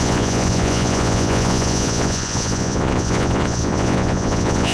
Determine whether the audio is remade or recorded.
remade